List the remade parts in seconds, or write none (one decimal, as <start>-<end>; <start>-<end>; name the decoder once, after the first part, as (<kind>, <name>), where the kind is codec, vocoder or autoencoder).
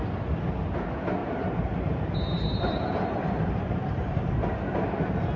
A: 1.2-4.4 (vocoder, BigVGAN v2)